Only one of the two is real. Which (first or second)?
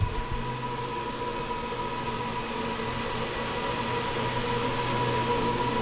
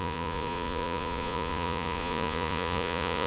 first